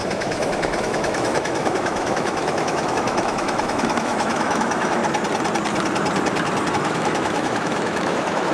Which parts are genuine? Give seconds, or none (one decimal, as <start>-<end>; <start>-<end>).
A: 5.0-6.7